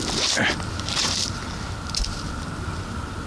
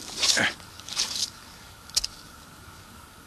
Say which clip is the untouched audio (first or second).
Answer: first